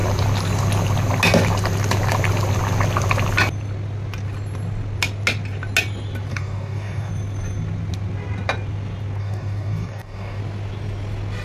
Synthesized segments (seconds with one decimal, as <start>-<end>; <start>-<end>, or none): 6.3-7.1; 9.2-10.4